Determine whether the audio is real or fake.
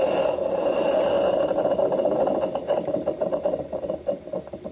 real